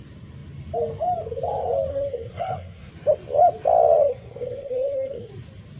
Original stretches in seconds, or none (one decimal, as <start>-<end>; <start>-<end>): 0.0-1.9; 2.9-4.0; 5.3-5.8